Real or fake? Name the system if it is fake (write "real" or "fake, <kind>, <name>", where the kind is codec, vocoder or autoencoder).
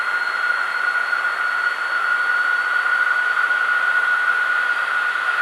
real